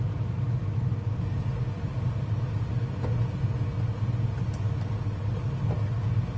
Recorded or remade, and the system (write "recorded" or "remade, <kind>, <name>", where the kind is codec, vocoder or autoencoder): recorded